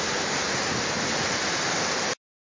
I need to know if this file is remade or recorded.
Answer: recorded